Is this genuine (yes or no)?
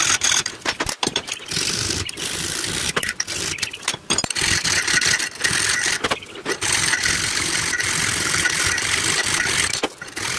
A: no